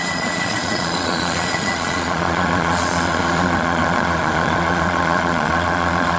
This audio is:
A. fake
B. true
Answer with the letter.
A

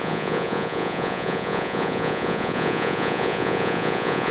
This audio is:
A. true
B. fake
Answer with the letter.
B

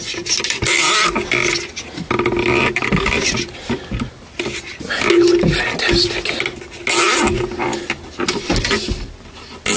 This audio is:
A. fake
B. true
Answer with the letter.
B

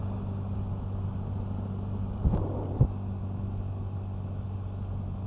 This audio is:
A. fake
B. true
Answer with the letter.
B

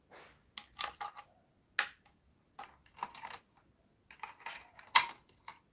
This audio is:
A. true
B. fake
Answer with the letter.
A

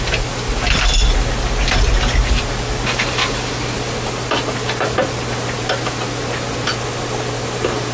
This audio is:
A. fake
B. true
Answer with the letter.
B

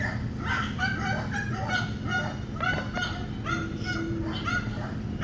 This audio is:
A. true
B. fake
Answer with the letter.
A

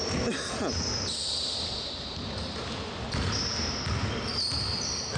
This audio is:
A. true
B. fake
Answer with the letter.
A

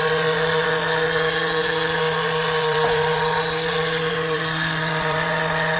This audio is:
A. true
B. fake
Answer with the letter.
B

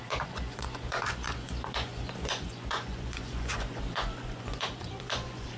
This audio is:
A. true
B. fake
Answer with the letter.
B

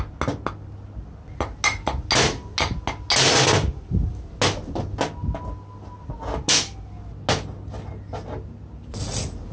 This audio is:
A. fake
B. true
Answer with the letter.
B